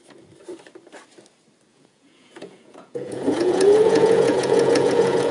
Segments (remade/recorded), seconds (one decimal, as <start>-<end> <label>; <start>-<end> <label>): 0.0-1.7 recorded; 1.7-5.3 remade